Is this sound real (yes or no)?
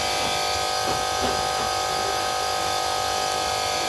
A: yes